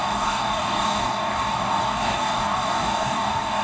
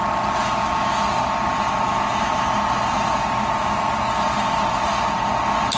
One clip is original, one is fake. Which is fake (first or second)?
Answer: first